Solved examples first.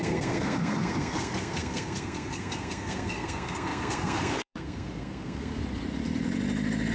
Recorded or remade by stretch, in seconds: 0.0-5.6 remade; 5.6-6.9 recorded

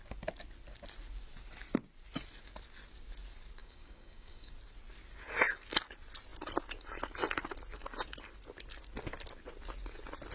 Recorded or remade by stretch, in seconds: 0.0-3.6 recorded; 3.6-4.5 remade; 4.5-10.3 recorded

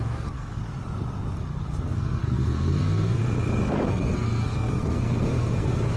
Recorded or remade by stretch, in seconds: 0.0-0.6 remade; 0.6-1.8 recorded; 1.8-3.2 remade; 3.2-3.9 recorded; 3.9-6.0 remade

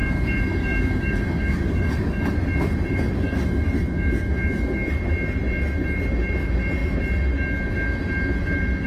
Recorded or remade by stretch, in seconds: 0.0-2.3 remade; 2.3-2.9 recorded; 2.9-4.9 remade; 4.9-8.9 recorded

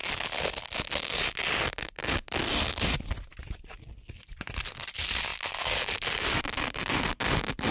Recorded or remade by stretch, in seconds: 0.0-7.7 recorded